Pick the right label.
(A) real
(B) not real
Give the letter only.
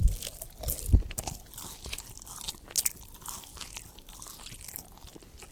A